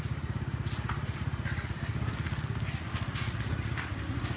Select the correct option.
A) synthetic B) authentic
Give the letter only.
B